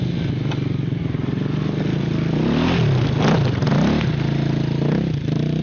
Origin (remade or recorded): recorded